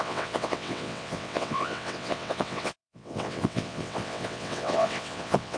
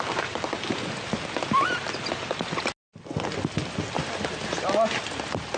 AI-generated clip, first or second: first